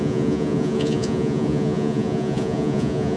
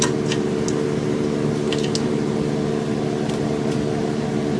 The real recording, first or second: second